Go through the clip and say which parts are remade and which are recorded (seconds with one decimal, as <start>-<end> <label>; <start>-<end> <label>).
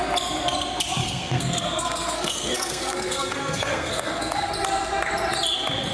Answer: 0.0-1.0 recorded; 1.0-4.5 remade; 4.5-5.9 recorded